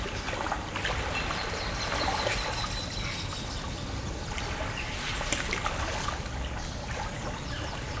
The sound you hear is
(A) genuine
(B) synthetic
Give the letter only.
A